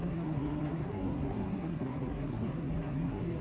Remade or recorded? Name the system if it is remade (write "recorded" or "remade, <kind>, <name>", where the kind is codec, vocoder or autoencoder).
remade, codec, SNAC